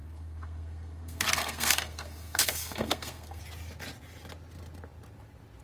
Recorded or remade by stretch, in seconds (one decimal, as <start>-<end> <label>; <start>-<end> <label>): 0.0-3.4 remade; 3.4-5.6 recorded